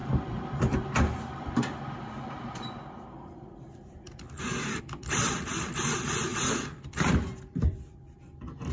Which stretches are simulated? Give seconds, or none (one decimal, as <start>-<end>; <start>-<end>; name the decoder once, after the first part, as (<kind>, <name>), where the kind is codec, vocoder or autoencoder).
0.0-8.7 (vocoder, BigVGAN v2)